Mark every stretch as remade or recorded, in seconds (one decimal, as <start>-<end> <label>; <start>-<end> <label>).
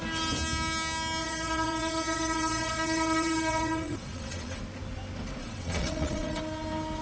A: 0.0-1.2 recorded; 1.2-4.6 remade; 4.6-5.4 recorded; 5.4-6.4 remade; 6.4-7.0 recorded